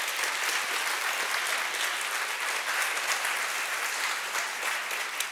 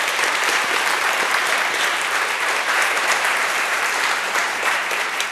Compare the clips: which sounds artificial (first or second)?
second